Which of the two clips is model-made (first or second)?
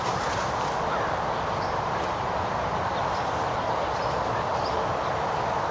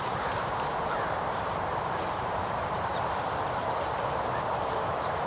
second